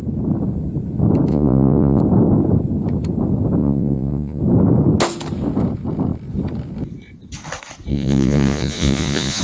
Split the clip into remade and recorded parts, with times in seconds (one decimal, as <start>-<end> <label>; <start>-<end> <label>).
0.0-1.3 recorded; 1.3-2.0 remade; 2.0-3.6 recorded; 3.6-4.4 remade; 4.4-7.9 recorded; 7.9-9.4 remade